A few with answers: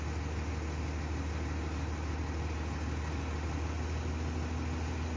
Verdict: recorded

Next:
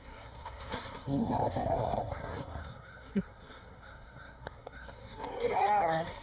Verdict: remade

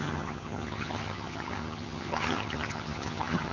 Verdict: remade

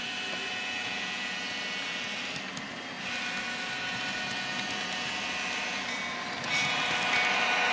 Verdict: recorded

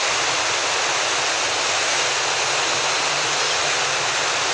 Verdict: recorded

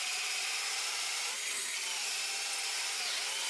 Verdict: recorded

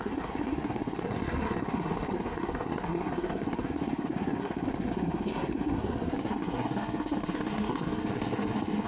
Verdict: remade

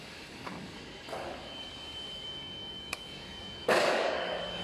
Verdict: remade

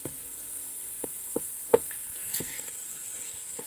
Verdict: remade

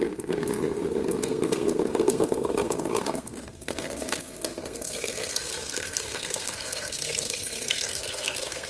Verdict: remade